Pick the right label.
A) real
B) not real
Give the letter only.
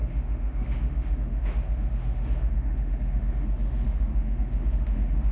B